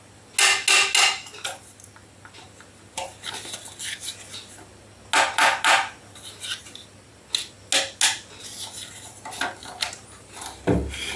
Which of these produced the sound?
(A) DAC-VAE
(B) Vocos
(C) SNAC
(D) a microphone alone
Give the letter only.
D